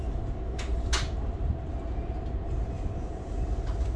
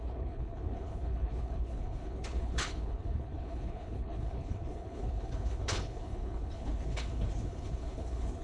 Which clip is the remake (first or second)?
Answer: second